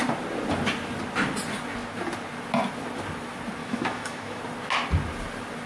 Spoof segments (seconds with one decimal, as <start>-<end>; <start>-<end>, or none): 3.6-4.4